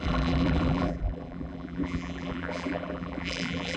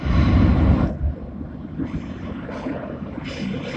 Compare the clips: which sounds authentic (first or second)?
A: second